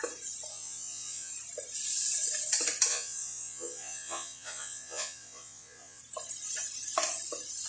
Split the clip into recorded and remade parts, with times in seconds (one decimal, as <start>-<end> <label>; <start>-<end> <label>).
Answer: 0.0-0.5 recorded; 0.5-1.3 remade; 1.3-2.9 recorded; 2.9-6.0 remade; 6.0-7.7 recorded